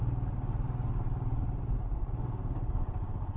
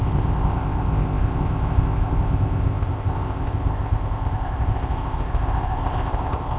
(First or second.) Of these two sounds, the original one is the first